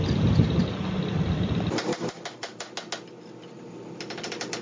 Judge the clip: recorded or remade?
recorded